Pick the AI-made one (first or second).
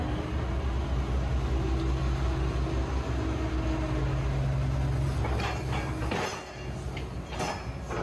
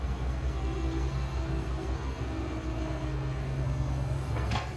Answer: second